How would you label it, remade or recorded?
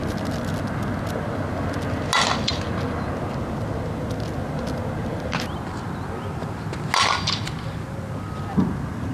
recorded